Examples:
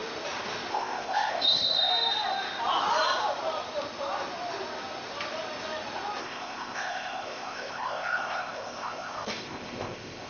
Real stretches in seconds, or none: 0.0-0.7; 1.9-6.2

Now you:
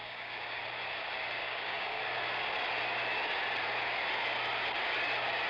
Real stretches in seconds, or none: 0.6-1.4; 2.0-5.5

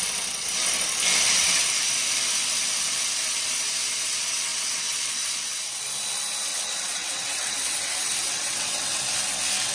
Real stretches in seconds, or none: 0.0-6.5; 9.0-9.7

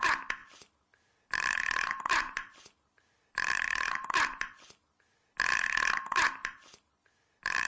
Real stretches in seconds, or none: 0.0-0.4; 5.0-6.4

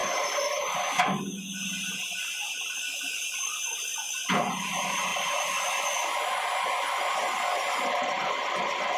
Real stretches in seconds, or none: 0.0-9.0

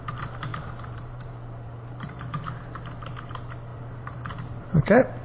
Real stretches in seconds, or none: 0.0-0.5; 2.6-3.7; 4.3-5.2

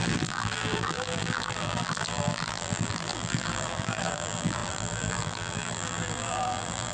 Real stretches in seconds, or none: none

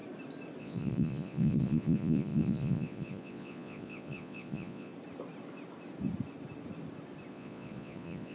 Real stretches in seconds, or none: 0.0-0.6; 4.9-7.3